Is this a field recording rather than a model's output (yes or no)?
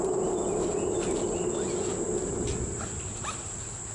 yes